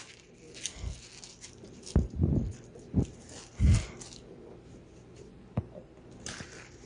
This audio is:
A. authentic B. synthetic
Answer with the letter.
A